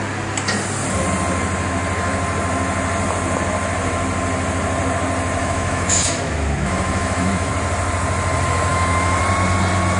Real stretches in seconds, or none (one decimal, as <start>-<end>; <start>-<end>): 0.0-5.4; 7.5-8.7; 9.2-10.0